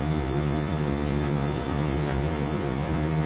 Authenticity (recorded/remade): remade